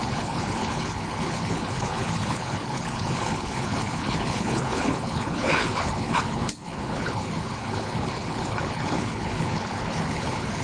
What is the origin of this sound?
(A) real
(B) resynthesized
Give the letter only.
B